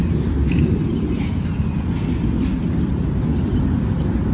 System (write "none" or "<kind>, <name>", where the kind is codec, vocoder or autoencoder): none